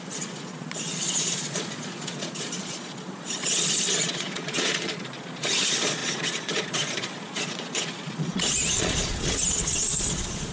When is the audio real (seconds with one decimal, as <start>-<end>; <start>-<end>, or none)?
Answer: none